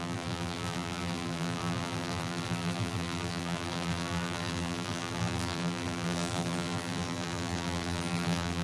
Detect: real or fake fake